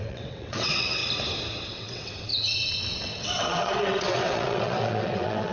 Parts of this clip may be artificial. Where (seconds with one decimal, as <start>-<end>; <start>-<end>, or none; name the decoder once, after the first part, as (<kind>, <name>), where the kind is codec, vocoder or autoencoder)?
0.0-1.0 (vocoder, WaveNeXt); 1.7-5.5